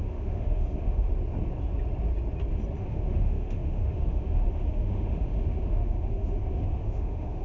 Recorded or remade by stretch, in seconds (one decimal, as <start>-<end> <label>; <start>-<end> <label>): 0.0-1.1 remade; 1.1-2.8 recorded; 2.8-7.4 remade